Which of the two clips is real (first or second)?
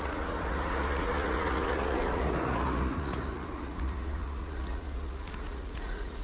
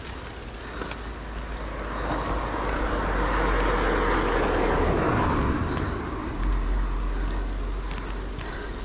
second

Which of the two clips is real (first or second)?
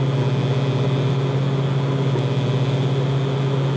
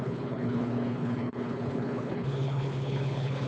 first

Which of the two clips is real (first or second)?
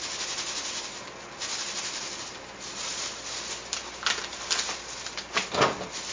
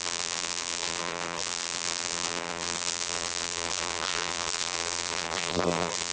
first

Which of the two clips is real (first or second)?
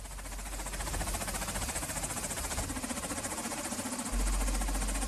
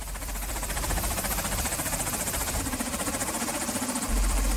first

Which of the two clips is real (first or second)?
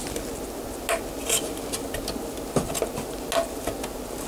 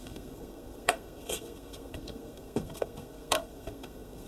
first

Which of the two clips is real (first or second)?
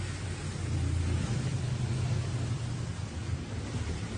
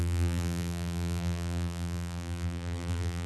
first